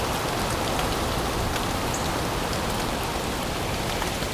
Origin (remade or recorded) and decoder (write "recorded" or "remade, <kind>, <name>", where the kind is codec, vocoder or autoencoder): recorded